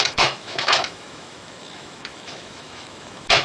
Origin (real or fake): fake